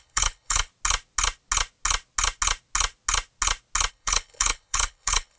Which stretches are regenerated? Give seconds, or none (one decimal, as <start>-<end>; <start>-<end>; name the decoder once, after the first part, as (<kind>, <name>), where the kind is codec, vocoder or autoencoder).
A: 0.0-0.7 (codec, HILCodec); 3.9-5.4